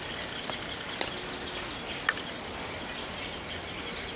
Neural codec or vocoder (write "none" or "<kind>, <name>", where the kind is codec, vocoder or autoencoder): none